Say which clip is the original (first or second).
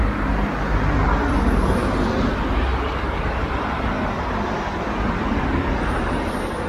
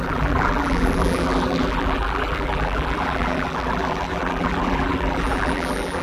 first